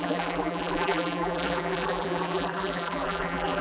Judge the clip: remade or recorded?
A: remade